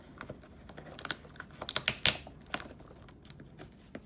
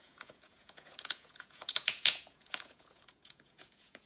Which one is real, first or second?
first